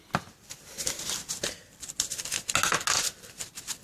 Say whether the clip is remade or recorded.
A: recorded